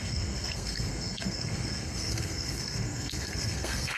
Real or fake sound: fake